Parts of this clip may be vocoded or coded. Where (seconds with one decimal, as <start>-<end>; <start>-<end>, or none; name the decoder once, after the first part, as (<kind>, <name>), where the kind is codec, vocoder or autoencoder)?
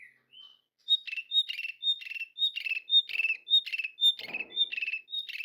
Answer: none